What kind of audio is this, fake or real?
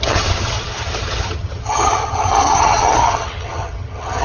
fake